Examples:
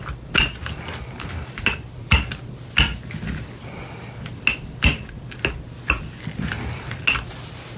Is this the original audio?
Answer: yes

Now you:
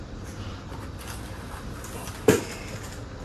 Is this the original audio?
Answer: yes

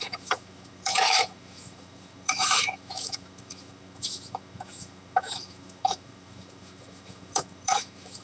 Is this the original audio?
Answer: no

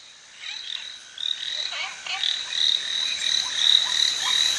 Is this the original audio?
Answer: yes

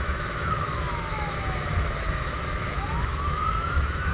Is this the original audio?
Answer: no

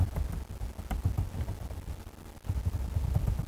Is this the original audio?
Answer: yes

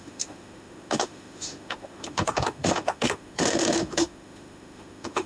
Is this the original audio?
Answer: no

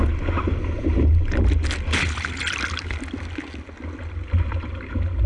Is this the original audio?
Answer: yes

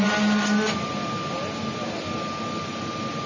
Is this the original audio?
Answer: yes